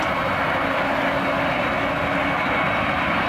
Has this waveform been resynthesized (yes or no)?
no